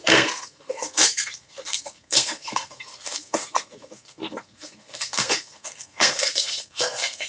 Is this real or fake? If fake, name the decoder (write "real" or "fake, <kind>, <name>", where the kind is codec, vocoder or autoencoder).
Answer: fake, codec, SNAC